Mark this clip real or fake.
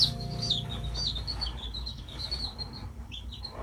fake